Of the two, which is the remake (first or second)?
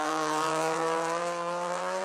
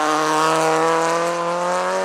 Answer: first